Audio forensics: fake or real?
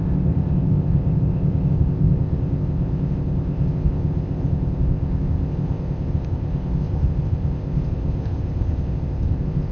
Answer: fake